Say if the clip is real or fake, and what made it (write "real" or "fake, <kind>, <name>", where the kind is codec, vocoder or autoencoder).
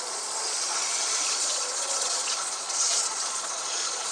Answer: fake, vocoder, Vocos